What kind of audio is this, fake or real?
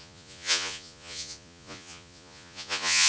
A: fake